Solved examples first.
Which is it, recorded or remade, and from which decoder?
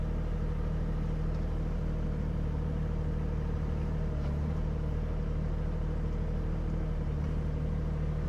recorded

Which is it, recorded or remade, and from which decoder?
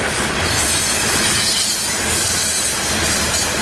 recorded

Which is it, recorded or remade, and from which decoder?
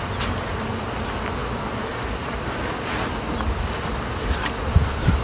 remade, vocoder, BigVGAN v2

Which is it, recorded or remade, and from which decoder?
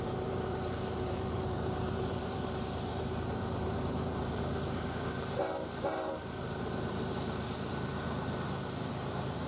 remade, vocoder, BigVGAN v2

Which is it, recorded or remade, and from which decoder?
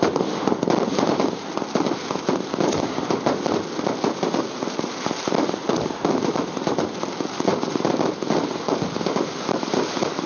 remade, vocoder, BigVGAN v2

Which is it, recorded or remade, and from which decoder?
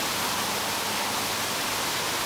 recorded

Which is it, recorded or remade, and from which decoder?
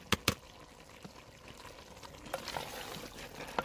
recorded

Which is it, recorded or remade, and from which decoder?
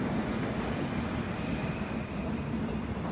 recorded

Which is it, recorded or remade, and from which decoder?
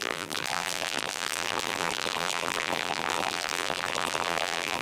remade, vocoder, BigVGAN v2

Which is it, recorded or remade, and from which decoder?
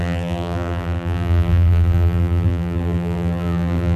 remade, vocoder, BigVGAN v2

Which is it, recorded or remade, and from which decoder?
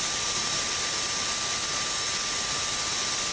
recorded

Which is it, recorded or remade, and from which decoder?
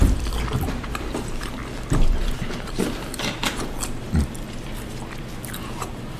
remade, vocoder, BigVGAN v2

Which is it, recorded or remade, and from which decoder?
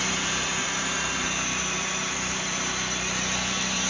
remade, vocoder, BigVGAN v2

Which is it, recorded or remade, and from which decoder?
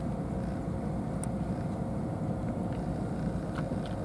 recorded